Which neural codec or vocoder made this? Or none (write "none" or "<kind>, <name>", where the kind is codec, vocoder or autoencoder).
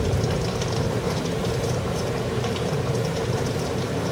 vocoder, BigVGAN v2